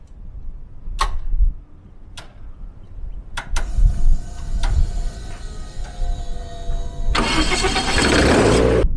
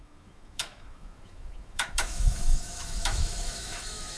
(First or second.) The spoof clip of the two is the second